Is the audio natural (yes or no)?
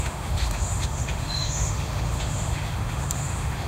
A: no